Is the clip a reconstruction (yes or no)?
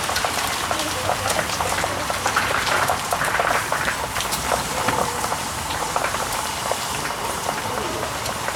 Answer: yes